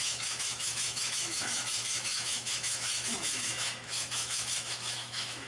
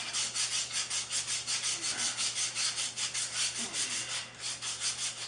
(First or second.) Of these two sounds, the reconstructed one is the first